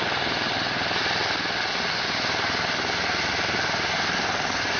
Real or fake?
real